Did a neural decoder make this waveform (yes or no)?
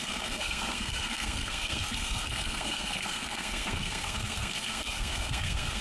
yes